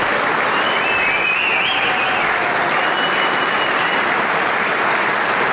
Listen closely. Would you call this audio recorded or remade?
recorded